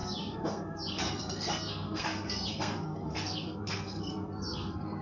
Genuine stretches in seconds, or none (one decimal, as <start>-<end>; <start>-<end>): none